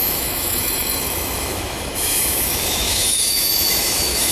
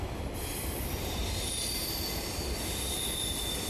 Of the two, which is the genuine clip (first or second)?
second